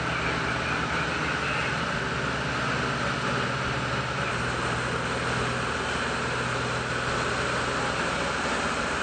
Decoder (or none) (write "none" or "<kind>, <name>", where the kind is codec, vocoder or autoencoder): none